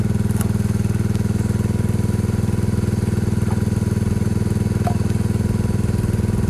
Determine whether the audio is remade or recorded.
recorded